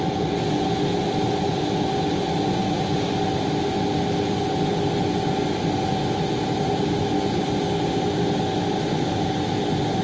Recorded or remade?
recorded